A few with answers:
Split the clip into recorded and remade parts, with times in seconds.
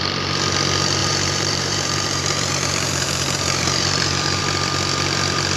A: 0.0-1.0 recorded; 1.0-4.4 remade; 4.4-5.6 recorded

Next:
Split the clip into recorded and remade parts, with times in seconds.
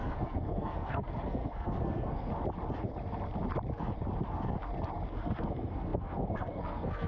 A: 0.0-2.3 remade; 2.3-5.1 recorded; 5.1-7.1 remade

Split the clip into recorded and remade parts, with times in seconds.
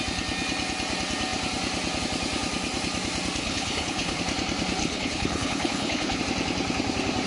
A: 0.0-3.4 recorded; 3.4-4.2 remade; 4.2-4.8 recorded; 4.8-6.2 remade; 6.2-7.3 recorded